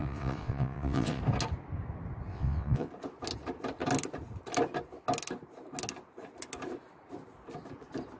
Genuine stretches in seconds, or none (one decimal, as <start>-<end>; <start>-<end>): 1.2-2.3; 2.9-8.2